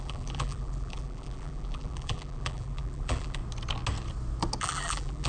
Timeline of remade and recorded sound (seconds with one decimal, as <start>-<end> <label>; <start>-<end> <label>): 0.0-3.4 remade; 3.4-4.6 recorded; 4.6-5.3 remade